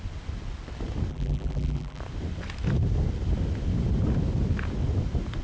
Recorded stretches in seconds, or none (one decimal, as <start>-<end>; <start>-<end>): 0.0-1.1; 2.0-5.4